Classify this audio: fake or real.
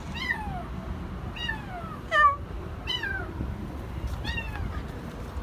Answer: real